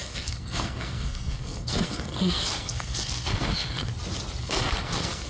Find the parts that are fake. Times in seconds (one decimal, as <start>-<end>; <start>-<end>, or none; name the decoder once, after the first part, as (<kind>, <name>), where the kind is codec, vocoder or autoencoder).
0.0-3.9 (codec, SNAC); 4.4-5.3